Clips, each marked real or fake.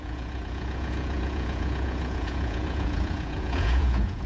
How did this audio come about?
fake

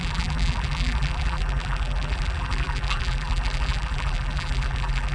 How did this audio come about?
fake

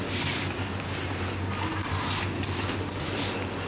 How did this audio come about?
real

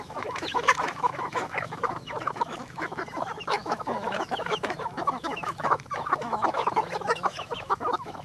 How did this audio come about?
fake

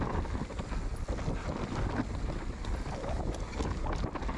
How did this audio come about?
real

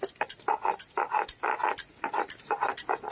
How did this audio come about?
real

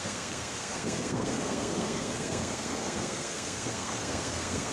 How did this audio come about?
fake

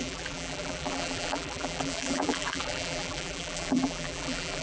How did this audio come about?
fake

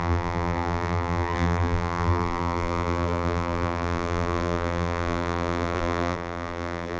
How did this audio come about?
fake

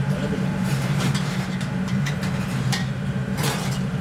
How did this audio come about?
fake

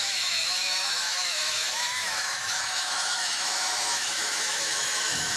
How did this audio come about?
fake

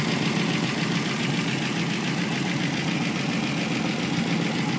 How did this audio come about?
real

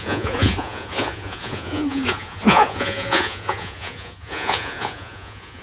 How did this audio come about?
fake